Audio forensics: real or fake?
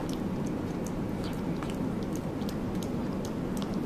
real